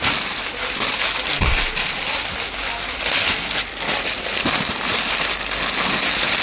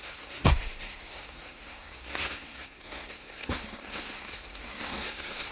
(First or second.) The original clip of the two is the first